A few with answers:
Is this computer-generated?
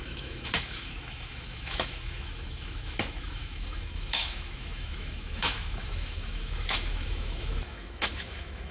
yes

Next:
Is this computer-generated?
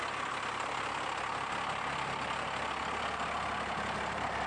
no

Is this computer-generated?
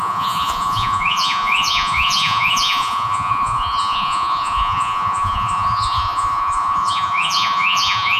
yes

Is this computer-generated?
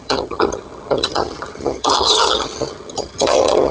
yes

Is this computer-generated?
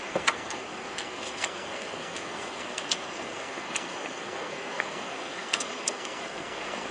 yes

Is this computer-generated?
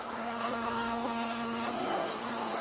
yes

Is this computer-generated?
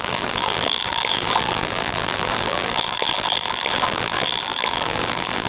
yes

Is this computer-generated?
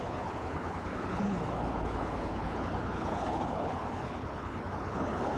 yes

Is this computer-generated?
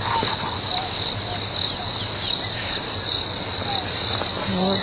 no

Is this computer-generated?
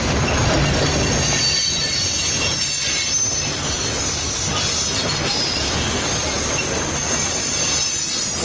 no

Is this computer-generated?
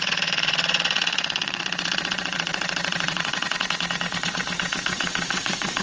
yes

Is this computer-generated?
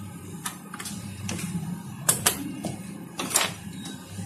yes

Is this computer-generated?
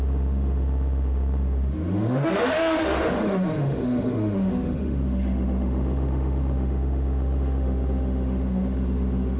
yes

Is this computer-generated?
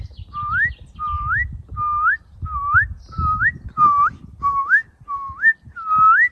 no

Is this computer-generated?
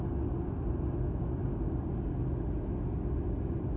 no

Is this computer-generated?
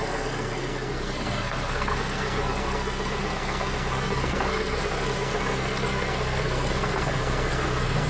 yes